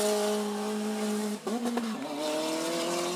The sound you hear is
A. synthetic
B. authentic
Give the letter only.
B